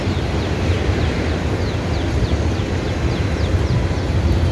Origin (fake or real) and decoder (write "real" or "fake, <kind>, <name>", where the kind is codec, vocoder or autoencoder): real